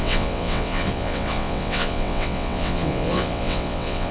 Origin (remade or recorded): remade